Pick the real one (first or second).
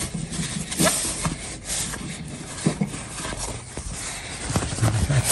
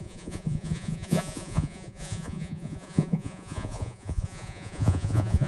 first